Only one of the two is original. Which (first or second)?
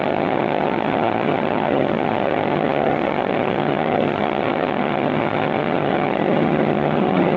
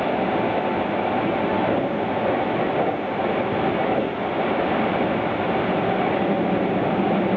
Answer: second